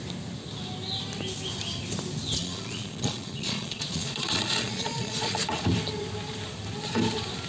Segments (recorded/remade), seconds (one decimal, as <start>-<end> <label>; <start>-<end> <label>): 0.0-2.4 recorded; 2.4-5.6 remade; 5.6-7.5 recorded